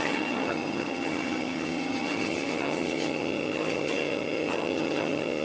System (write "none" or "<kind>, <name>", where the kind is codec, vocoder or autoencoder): vocoder, HiFi-GAN